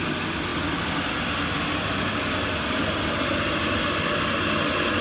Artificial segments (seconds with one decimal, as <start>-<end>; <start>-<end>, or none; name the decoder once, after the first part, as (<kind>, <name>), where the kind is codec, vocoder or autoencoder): none